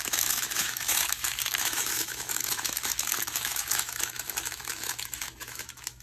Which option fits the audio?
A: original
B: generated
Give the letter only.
B